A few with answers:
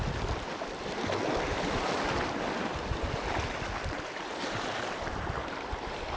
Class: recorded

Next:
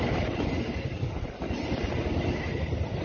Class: recorded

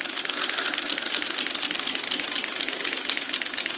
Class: recorded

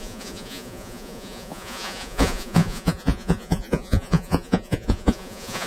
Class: remade